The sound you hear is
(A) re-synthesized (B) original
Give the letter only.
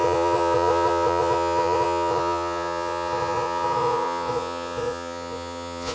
A